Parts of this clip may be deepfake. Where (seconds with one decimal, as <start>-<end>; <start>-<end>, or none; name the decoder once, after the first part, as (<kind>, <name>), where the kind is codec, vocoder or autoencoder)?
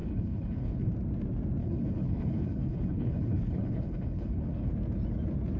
0.0-0.9 (codec, HILCodec); 1.6-4.7